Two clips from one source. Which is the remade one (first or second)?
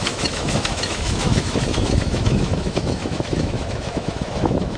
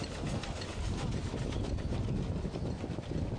first